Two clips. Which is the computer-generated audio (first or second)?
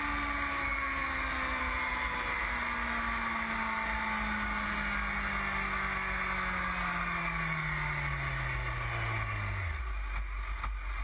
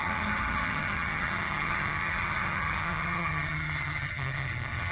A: second